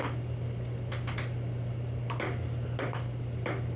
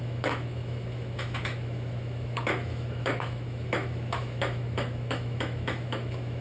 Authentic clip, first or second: first